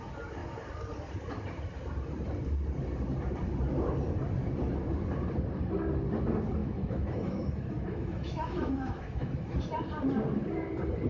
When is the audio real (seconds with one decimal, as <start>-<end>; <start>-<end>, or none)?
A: 0.0-6.6; 9.6-11.1